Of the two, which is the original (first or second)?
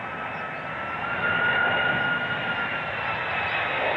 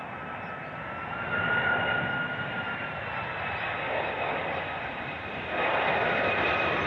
first